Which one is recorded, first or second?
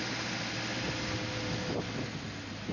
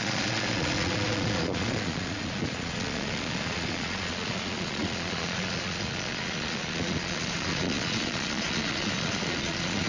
first